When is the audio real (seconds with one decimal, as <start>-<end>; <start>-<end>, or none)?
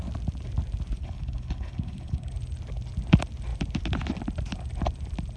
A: 0.0-1.0; 2.3-5.4